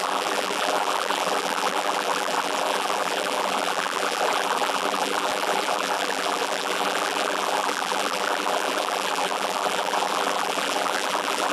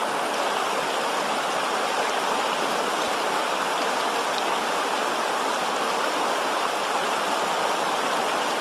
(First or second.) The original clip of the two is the second